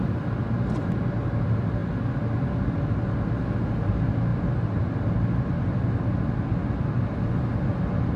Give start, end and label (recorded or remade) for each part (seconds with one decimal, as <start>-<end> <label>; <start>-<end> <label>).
0.0-4.3 recorded; 4.3-4.8 remade; 4.8-8.2 recorded